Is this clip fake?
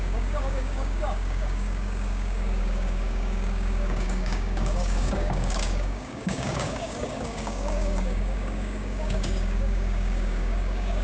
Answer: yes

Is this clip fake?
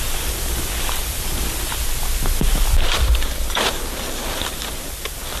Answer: no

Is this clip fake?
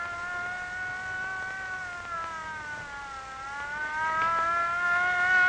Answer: no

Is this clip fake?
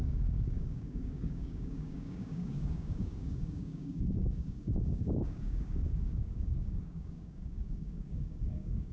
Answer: yes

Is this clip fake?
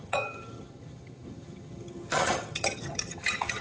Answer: yes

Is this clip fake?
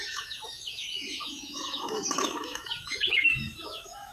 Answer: yes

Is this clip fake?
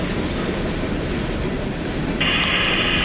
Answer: no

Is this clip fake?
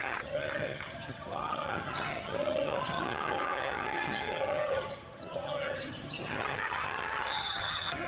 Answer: yes